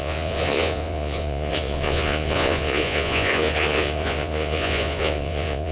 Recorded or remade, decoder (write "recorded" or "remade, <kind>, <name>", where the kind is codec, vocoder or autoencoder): remade, vocoder, Vocos